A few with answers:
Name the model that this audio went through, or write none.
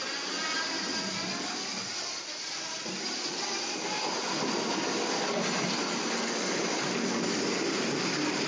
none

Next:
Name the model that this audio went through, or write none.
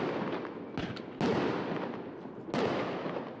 none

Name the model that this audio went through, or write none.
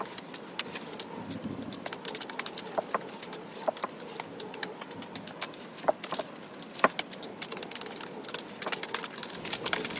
none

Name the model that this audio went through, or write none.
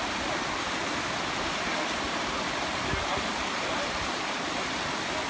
none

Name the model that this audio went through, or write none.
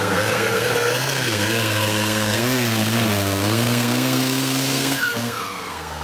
codec, SNAC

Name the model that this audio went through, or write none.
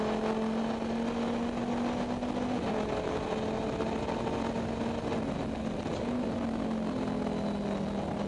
none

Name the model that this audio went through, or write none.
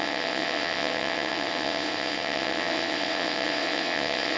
vocoder, WaveNeXt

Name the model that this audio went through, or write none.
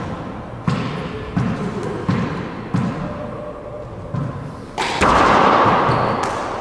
none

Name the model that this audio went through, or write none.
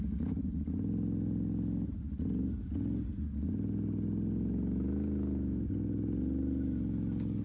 none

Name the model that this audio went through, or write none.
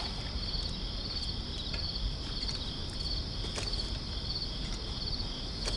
none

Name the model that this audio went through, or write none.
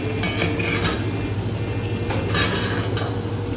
none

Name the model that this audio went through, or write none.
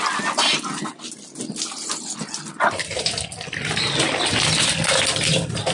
none